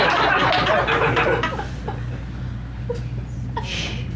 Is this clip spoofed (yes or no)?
no